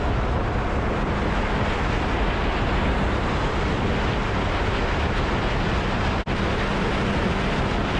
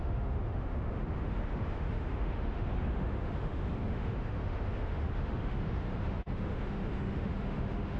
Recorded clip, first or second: first